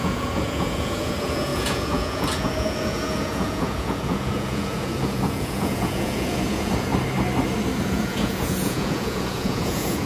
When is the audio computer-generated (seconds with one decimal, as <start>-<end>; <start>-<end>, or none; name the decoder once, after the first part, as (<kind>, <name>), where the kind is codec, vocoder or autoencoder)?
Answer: 0.0-6.9 (vocoder, Vocos); 7.8-10.1